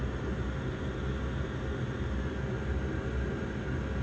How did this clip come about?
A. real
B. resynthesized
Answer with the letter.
A